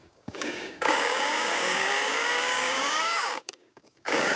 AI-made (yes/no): yes